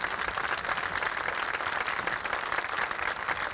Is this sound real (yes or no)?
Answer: yes